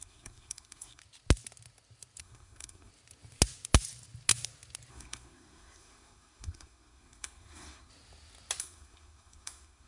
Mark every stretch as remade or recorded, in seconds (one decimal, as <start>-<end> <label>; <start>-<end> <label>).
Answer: 0.0-1.0 remade; 1.0-2.2 recorded; 2.2-2.9 remade; 2.9-4.9 recorded; 4.9-7.9 remade; 7.9-8.6 recorded; 8.6-9.9 remade